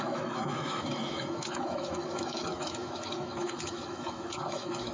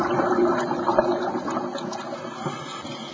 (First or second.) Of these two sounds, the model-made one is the first